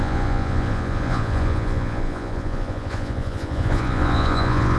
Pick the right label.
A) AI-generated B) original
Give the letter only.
A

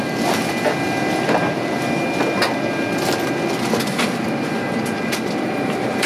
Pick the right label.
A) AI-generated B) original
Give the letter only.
B